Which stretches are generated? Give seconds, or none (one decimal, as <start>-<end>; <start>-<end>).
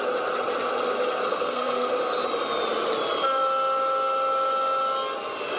1.3-1.9